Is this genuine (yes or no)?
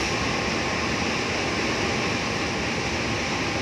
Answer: yes